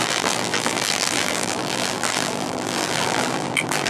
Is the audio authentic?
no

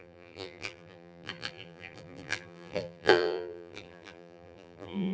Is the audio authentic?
no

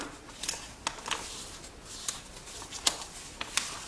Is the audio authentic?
yes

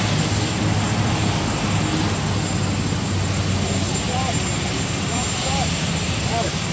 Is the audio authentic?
yes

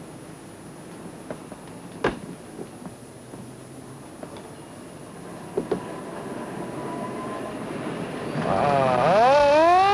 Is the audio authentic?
yes